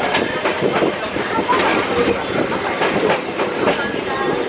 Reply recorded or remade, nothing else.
recorded